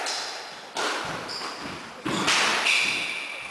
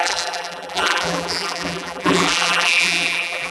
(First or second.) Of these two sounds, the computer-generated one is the second